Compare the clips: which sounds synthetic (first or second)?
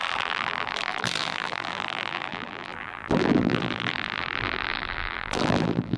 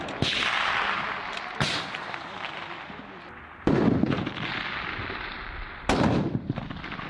first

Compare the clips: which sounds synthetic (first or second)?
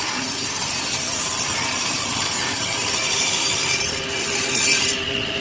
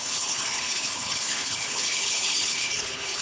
second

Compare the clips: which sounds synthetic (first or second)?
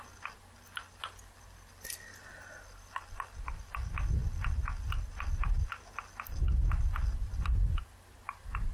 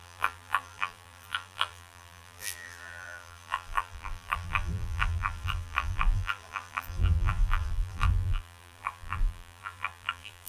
second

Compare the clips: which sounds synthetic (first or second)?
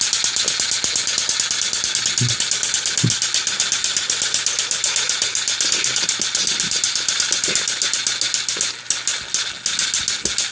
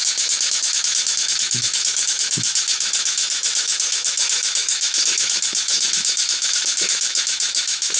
second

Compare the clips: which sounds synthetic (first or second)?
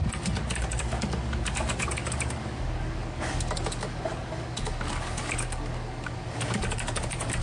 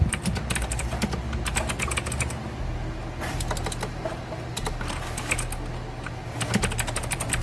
first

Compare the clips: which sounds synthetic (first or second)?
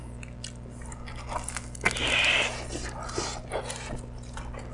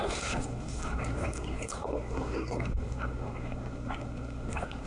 second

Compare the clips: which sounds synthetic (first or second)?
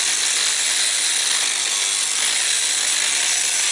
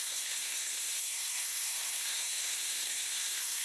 second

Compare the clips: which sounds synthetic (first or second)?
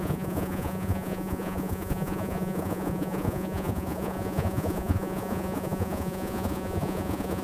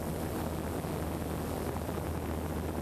first